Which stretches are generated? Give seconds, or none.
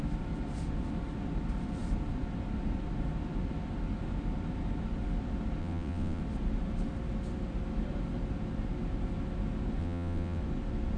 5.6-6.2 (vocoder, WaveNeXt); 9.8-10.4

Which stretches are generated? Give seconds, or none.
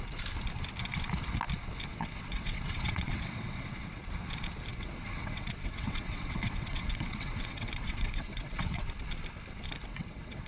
1.9-4.0 (vocoder, WaveNeXt); 4.7-8.8; 9.9-10.5